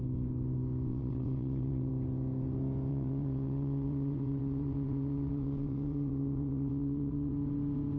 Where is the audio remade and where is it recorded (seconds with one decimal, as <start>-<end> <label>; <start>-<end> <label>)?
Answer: 0.0-0.9 recorded; 0.9-1.9 remade; 1.9-2.9 recorded; 2.9-7.3 remade; 7.3-8.0 recorded